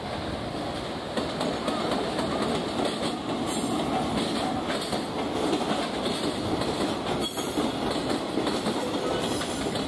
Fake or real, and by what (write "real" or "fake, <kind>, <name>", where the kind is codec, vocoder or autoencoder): real